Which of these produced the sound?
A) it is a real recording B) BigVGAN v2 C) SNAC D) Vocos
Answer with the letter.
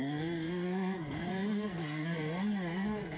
C